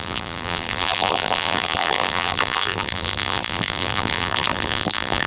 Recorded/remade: remade